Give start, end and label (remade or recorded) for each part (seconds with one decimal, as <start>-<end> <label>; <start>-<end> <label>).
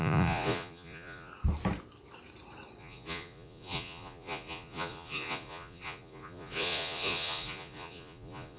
0.0-1.3 remade; 1.3-2.8 recorded; 2.8-8.6 remade